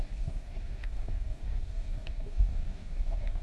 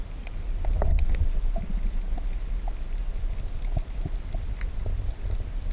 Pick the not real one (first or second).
first